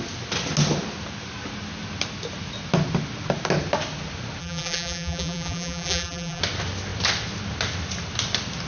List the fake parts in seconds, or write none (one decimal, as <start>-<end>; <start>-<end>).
4.4-6.4